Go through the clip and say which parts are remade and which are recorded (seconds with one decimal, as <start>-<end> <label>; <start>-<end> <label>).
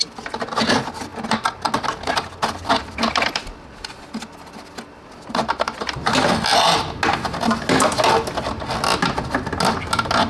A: 0.0-10.3 recorded